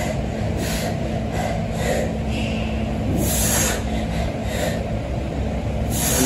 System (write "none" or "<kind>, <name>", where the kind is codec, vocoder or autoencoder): none